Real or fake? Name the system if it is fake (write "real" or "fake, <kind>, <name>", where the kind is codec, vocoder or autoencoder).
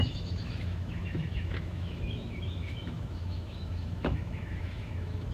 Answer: fake, autoencoder, DAC-VAE